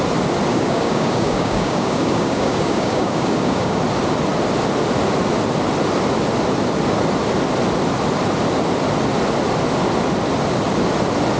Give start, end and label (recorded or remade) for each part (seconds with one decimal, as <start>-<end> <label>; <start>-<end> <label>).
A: 0.0-0.5 recorded; 0.5-3.8 remade; 3.8-11.4 recorded